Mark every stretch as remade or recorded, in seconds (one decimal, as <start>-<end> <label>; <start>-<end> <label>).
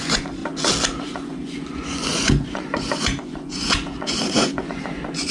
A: 0.0-0.4 remade; 0.4-1.0 recorded; 1.0-5.3 remade